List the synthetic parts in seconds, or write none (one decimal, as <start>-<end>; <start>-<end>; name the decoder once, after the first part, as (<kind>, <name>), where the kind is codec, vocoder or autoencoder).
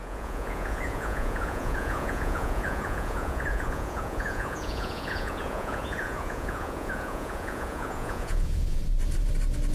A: 0.0-8.8 (vocoder, Vocos)